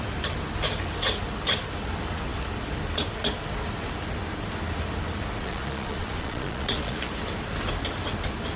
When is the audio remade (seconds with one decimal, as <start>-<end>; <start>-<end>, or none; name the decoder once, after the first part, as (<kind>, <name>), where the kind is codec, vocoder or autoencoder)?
5.4-7.1 (vocoder, Vocos)